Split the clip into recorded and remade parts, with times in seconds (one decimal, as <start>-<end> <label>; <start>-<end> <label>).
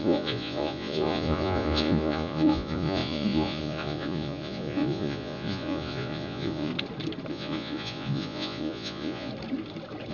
0.0-6.7 remade; 6.7-7.3 recorded; 7.3-9.3 remade; 9.3-10.1 recorded